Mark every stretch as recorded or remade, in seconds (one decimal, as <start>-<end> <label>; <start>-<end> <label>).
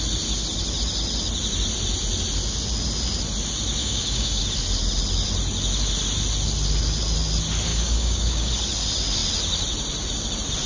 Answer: 0.0-3.8 recorded; 3.8-4.4 remade; 4.4-7.7 recorded; 7.7-8.5 remade; 8.5-10.7 recorded